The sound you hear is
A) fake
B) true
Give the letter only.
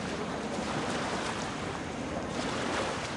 A